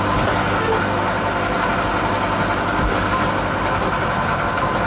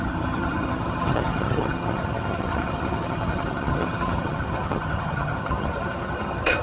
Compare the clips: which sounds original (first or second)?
first